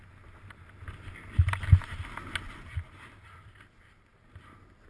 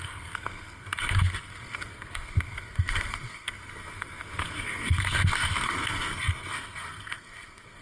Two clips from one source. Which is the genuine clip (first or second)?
first